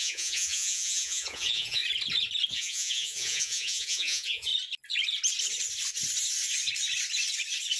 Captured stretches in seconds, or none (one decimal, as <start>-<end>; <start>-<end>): 1.8-2.5; 4.5-7.8